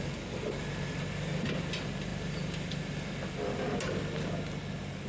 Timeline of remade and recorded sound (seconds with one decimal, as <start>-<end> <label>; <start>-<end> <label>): 0.0-5.1 recorded